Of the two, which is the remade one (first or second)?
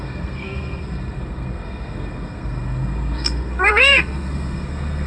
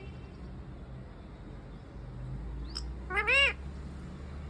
first